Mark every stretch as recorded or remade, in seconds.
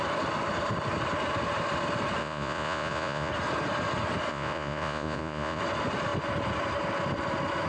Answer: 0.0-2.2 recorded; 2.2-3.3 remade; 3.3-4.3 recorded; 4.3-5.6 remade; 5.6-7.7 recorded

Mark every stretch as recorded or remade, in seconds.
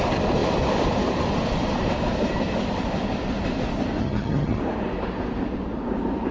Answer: 0.0-4.0 recorded; 4.0-4.6 remade; 4.6-6.3 recorded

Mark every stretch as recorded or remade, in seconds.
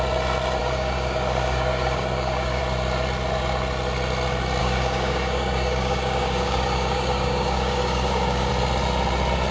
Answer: 0.0-0.6 recorded; 0.6-2.6 remade; 2.6-4.6 recorded; 4.6-8.5 remade; 8.5-9.5 recorded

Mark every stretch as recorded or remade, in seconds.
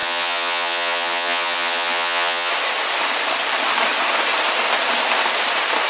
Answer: 0.0-2.5 remade; 2.5-5.9 recorded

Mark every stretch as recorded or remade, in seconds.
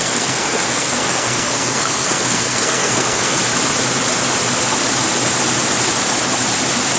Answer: 0.0-3.4 remade; 3.4-7.0 recorded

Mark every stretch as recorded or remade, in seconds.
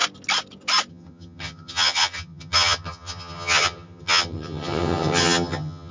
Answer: 0.0-0.9 recorded; 0.9-5.9 remade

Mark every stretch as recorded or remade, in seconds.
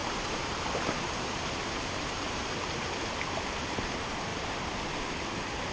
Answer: 0.0-2.4 remade; 2.4-3.6 recorded; 3.6-4.3 remade; 4.3-5.7 recorded